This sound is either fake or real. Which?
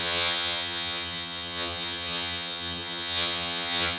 fake